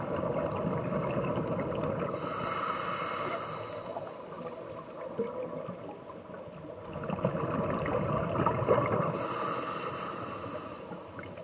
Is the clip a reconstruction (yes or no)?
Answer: no